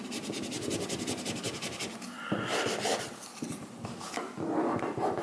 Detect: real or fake real